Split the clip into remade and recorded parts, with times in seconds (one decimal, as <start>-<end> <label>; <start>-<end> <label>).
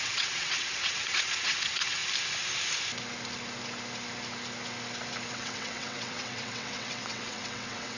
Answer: 0.0-2.0 remade; 2.0-5.3 recorded; 5.3-8.0 remade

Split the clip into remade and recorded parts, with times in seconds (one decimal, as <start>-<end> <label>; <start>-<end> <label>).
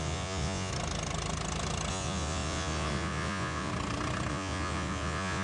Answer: 0.0-0.7 remade; 0.7-1.9 recorded; 1.9-3.7 remade; 3.7-4.3 recorded; 4.3-5.4 remade